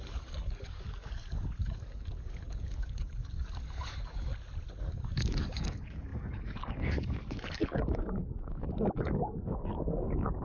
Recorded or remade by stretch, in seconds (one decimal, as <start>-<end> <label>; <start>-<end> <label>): 0.0-4.3 remade; 4.3-4.8 recorded; 4.8-10.4 remade